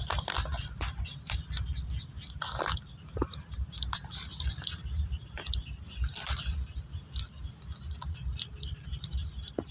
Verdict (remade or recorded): recorded